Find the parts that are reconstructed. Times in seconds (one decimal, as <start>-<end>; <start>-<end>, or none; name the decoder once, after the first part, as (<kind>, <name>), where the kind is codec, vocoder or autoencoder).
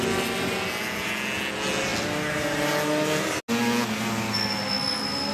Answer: none